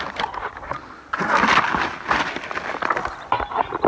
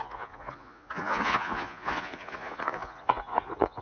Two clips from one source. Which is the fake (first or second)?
second